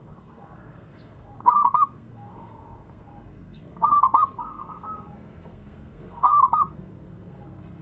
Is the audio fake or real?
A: fake